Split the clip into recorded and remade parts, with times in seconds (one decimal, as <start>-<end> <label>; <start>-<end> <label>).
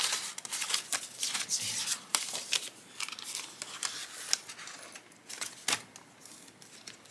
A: 0.0-7.1 recorded